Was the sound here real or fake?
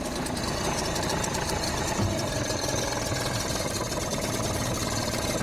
fake